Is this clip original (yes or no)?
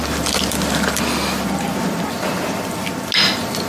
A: yes